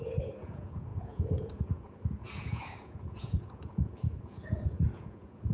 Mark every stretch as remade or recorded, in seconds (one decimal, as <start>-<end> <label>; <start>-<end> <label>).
0.0-5.5 remade